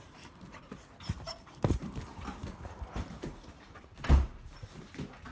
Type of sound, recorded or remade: remade